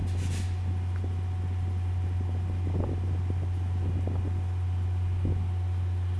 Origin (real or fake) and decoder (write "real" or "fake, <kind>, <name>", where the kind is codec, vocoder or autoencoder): real